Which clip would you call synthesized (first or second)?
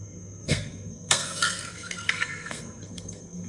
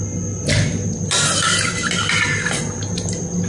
first